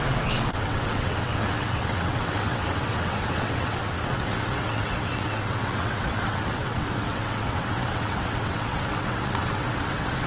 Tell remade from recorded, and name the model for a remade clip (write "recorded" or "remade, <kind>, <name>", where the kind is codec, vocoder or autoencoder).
remade, vocoder, WaveNeXt